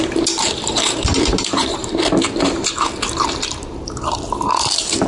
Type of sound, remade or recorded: remade